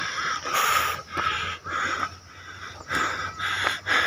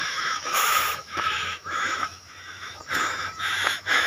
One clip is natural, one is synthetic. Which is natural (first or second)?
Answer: first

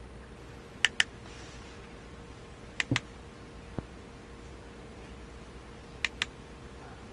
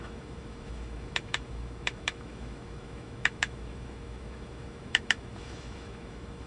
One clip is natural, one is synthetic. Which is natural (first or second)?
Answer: first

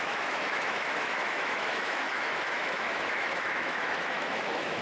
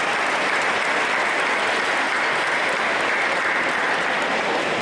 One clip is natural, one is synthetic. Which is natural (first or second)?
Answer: second